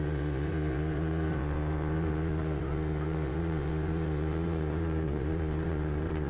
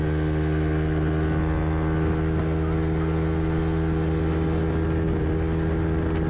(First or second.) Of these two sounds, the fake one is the first